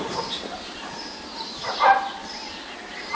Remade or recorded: recorded